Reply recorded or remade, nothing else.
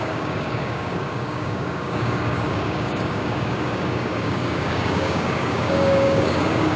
remade